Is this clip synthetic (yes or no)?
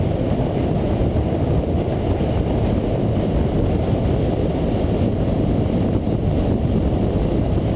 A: no